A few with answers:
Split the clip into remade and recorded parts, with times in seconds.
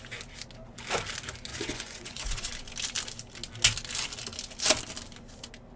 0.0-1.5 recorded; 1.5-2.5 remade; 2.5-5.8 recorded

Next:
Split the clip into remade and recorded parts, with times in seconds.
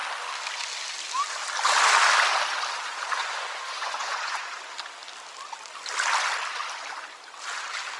0.0-3.2 recorded; 3.2-4.6 remade; 4.6-8.0 recorded